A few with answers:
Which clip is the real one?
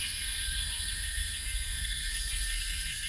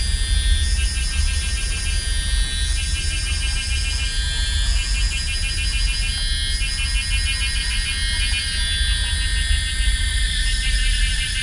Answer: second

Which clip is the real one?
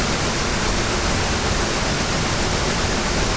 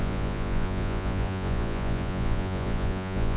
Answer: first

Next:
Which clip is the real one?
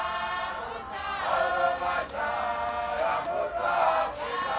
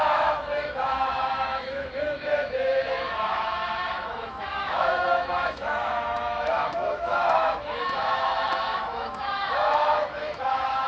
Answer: first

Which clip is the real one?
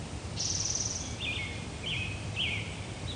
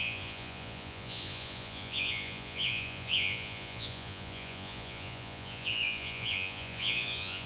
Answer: first